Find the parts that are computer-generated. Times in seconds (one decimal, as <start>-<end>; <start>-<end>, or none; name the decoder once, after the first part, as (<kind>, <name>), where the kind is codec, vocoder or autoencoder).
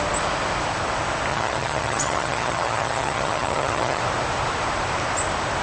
1.3-4.0 (vocoder, HiFi-GAN)